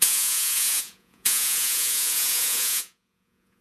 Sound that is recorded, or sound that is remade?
remade